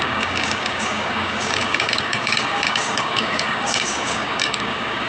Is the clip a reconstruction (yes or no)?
yes